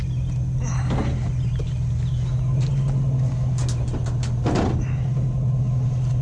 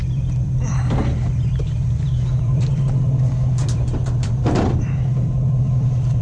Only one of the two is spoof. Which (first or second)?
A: second